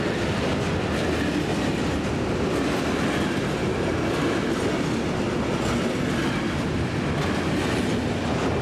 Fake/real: real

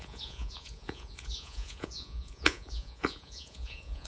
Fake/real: fake